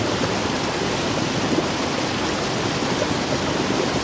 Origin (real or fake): real